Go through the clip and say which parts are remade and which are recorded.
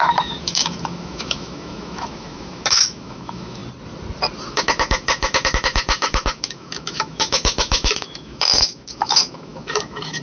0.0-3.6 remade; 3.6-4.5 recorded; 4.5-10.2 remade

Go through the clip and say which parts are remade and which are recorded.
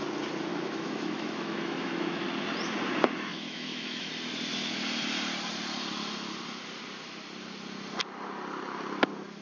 0.0-0.5 recorded; 0.5-2.2 remade; 2.2-3.3 recorded; 3.3-4.1 remade; 4.1-9.4 recorded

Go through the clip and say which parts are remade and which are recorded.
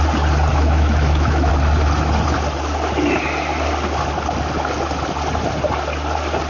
0.0-0.5 recorded; 0.5-1.5 remade; 1.5-6.5 recorded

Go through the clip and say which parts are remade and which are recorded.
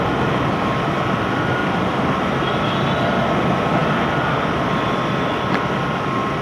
0.0-6.4 recorded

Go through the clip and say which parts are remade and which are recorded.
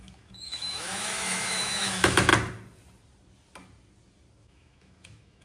0.0-2.3 remade; 2.3-4.4 recorded; 4.4-5.4 remade